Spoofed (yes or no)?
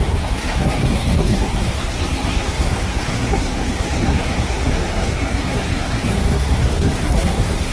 yes